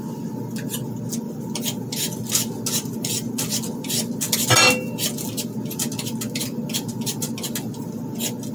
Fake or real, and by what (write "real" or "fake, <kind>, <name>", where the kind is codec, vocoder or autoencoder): real